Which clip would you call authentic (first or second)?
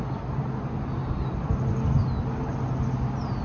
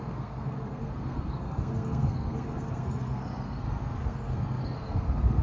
first